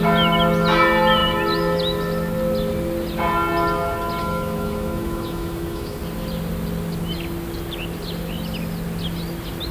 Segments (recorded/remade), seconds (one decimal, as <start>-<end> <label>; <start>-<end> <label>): 0.0-4.2 recorded; 4.2-6.0 remade; 6.0-9.7 recorded